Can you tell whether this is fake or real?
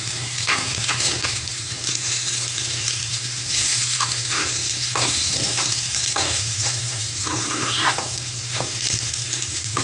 fake